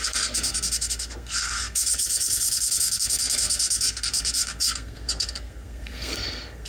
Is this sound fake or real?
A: fake